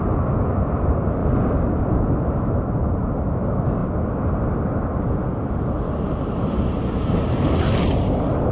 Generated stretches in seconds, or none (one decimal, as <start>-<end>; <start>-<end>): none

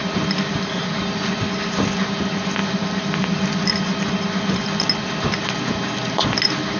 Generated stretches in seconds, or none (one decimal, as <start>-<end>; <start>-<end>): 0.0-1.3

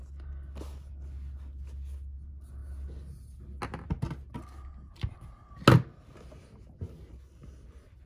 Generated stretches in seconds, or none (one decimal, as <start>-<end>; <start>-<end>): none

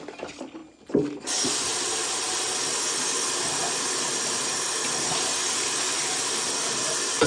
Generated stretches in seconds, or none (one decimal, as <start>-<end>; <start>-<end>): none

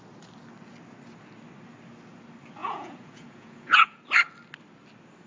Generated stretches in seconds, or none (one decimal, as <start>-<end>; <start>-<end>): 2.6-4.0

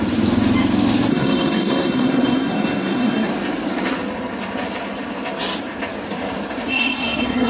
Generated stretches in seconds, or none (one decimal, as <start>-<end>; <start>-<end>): 1.1-3.3; 6.7-7.5

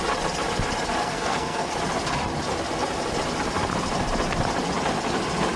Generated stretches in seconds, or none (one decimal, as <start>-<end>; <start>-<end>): 1.0-1.7

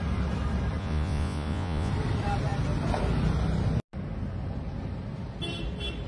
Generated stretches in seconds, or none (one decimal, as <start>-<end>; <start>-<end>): 0.8-1.9